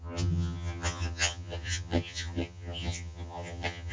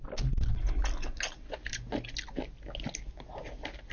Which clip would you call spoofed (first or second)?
first